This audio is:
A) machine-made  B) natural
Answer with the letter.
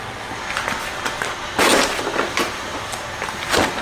B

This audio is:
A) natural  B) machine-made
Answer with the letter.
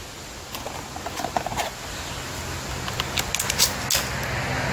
A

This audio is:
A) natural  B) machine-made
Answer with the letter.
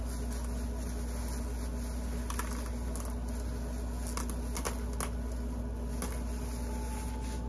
A